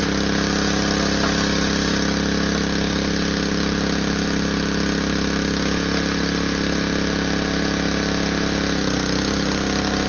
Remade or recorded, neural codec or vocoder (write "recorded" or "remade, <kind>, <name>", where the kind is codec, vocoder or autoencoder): recorded